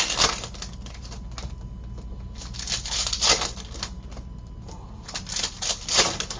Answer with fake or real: real